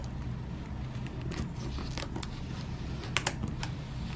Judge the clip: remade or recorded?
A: recorded